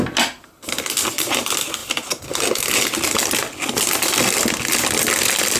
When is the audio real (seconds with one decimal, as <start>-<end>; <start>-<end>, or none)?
0.0-5.6